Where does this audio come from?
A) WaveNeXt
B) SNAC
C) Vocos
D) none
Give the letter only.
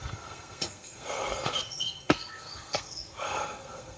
B